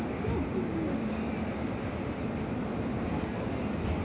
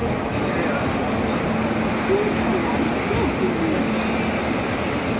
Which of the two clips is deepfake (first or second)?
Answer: first